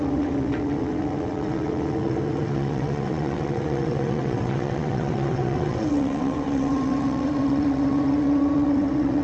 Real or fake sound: fake